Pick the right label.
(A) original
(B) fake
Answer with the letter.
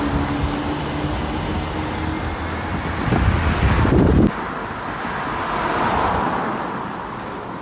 A